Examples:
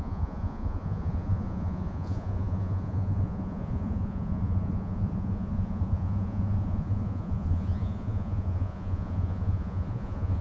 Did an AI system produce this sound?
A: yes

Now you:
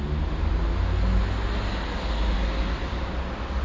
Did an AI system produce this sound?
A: no